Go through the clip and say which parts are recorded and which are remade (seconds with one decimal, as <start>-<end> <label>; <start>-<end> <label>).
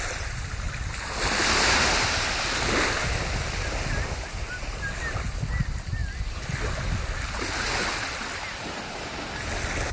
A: 0.0-9.9 recorded